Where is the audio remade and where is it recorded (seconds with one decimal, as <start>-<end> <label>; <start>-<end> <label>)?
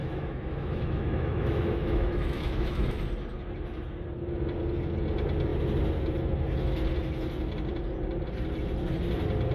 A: 0.0-3.0 remade; 3.0-9.5 recorded